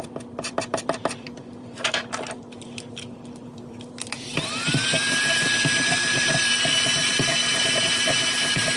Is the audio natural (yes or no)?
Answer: no